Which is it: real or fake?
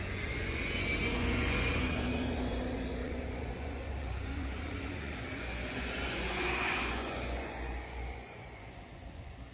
fake